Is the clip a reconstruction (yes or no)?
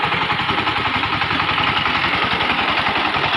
yes